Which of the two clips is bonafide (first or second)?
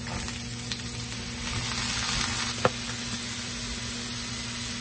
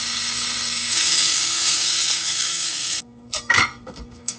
first